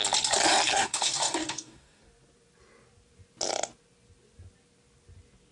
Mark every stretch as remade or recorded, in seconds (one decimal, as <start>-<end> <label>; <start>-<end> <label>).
0.0-0.7 recorded; 0.7-2.0 remade; 2.0-5.5 recorded